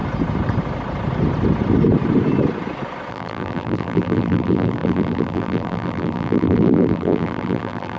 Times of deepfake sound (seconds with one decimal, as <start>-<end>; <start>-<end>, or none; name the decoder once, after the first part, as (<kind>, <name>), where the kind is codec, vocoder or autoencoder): 3.1-8.0 (vocoder, BigVGAN v2)